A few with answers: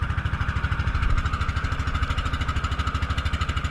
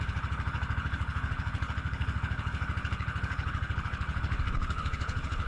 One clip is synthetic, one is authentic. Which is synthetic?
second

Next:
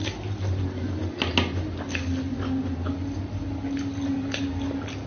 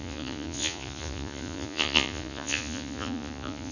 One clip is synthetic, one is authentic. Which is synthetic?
second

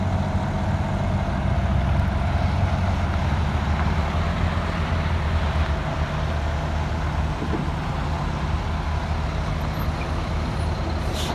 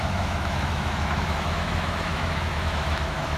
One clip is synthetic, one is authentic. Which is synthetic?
second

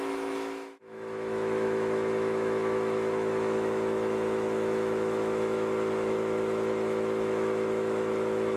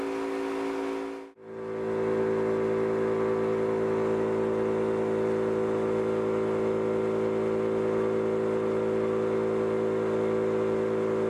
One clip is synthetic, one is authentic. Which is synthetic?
first